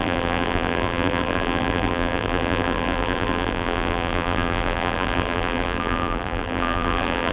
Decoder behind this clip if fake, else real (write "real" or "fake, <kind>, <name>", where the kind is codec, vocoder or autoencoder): fake, vocoder, BigVGAN v2